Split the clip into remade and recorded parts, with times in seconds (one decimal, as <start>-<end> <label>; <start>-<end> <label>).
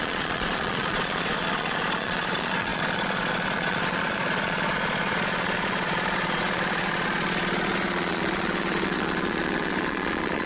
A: 0.0-10.5 remade